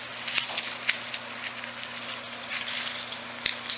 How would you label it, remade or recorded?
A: recorded